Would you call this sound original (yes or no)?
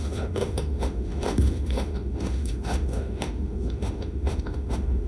no